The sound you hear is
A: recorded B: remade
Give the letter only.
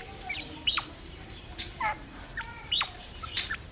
B